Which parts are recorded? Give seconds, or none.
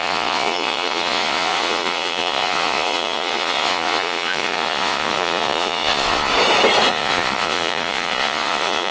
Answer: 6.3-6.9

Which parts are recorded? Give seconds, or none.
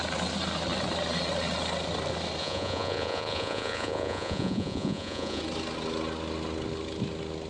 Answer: 0.0-2.4; 5.4-7.5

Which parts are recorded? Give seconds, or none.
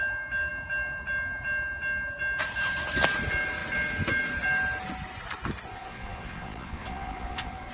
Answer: 0.0-5.7